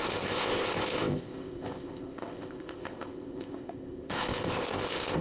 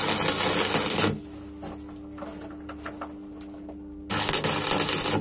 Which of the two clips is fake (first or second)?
first